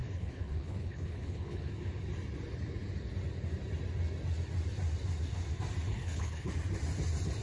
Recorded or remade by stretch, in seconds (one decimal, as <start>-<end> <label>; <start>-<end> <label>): 0.0-1.7 remade; 1.7-5.9 recorded; 5.9-6.5 remade; 6.5-7.4 recorded